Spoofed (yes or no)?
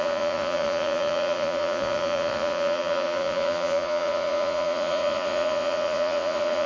yes